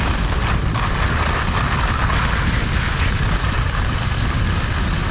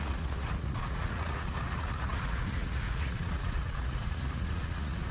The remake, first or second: second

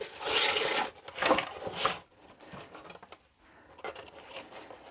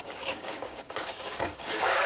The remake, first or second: second